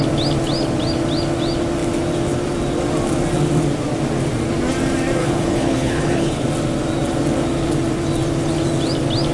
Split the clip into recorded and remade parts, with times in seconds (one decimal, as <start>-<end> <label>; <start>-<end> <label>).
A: 0.0-5.2 recorded; 5.2-6.4 remade; 6.4-9.3 recorded